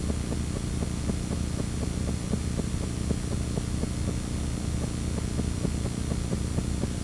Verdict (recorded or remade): recorded